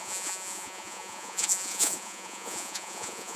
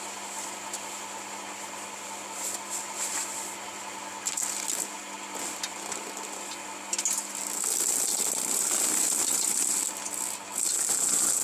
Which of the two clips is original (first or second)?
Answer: second